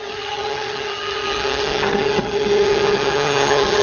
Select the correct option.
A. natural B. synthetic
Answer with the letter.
B